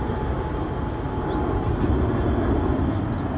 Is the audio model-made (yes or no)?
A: no